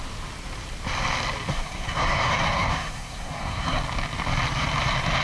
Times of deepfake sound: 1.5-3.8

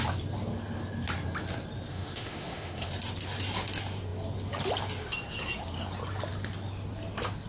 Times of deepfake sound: 1.9-2.9

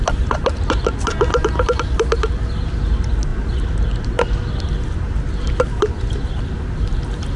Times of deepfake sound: none

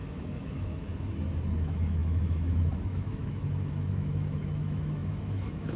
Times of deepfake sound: 0.0-0.9; 1.6-5.8